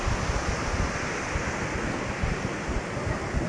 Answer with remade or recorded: recorded